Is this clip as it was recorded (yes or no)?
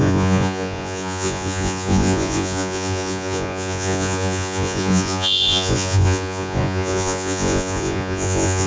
no